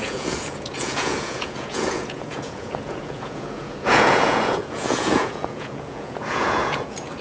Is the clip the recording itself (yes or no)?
no